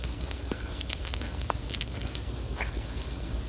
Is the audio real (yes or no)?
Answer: no